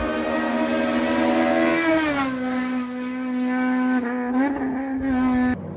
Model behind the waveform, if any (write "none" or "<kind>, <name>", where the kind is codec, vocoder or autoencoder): none